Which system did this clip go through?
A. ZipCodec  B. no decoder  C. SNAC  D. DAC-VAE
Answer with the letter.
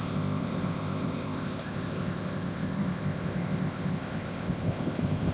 A